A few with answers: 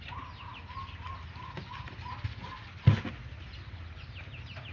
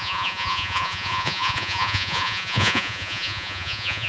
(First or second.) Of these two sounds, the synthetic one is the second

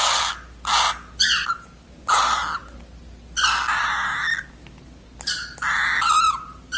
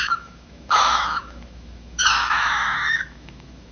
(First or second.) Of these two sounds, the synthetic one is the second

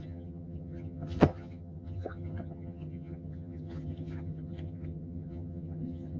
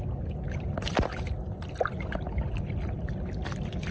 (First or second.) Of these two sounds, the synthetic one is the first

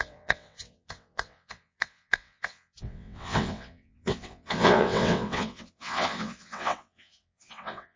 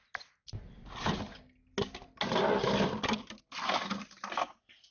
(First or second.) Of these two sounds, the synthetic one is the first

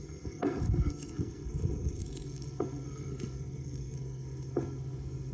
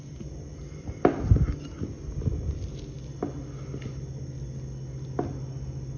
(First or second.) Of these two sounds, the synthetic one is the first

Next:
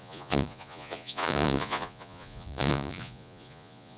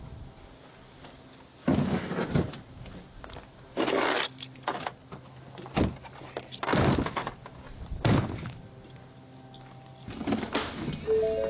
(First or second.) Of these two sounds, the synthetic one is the first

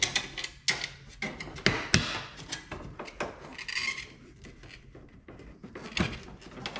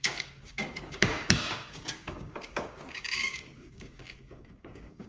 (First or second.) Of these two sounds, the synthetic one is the second